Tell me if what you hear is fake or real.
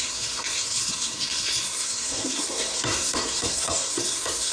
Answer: fake